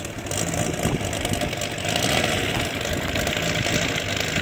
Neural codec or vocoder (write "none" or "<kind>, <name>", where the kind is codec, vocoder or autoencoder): none